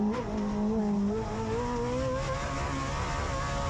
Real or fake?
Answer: real